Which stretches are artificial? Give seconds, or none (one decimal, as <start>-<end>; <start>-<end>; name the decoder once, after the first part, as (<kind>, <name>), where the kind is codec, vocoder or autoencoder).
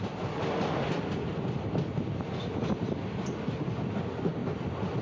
none